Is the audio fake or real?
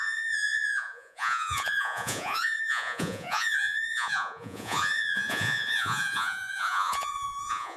fake